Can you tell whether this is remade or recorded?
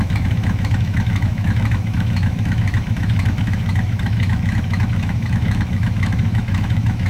remade